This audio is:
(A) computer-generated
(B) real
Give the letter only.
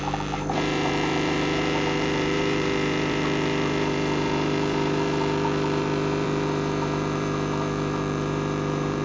A